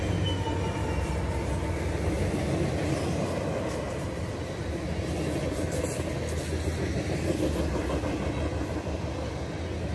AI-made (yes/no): no